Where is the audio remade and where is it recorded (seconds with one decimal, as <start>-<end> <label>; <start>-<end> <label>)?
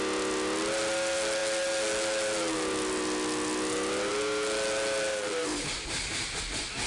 0.0-5.1 recorded; 5.1-6.4 remade; 6.4-6.9 recorded